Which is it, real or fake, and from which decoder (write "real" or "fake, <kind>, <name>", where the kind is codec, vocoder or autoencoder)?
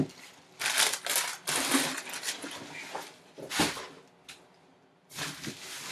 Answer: real